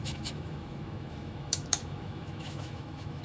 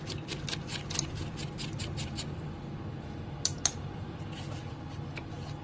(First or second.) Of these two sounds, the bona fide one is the second